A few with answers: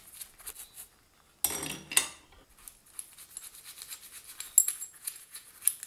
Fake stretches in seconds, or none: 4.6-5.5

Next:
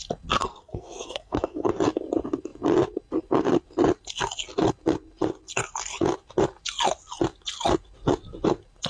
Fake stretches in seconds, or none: 0.4-1.7

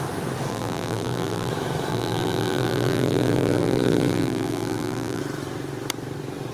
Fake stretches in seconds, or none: 0.5-1.5; 1.9-5.2

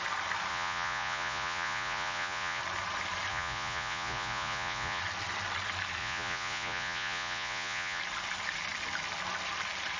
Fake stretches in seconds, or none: 0.5-2.6; 3.3-5.0; 6.0-8.0

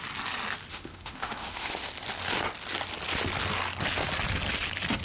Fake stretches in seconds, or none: 0.7-1.9

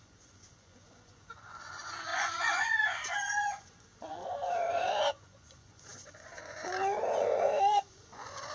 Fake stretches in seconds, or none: 0.0-8.5

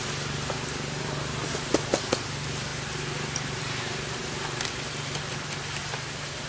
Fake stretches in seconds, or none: none